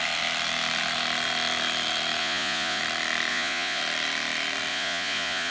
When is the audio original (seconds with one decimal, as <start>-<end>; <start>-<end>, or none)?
0.0-2.2; 2.8-3.3; 3.8-4.7